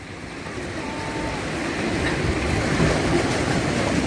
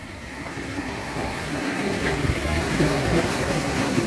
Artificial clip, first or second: second